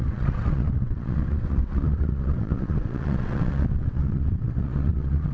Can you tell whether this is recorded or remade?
remade